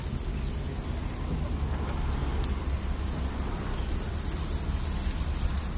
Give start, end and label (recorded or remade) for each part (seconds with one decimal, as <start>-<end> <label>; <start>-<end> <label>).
0.0-5.8 recorded